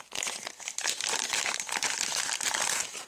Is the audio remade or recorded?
recorded